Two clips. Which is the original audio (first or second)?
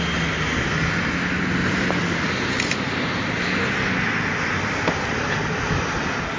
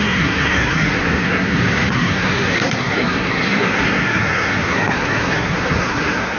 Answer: first